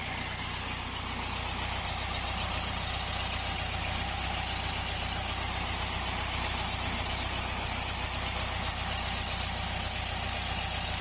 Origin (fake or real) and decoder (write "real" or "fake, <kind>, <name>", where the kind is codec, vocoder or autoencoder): real